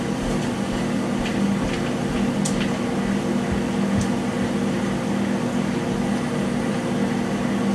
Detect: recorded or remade recorded